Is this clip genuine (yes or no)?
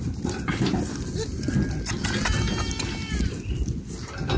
yes